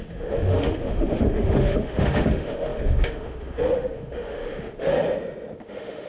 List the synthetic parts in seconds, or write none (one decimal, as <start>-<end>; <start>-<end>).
0.0-4.9; 5.6-6.1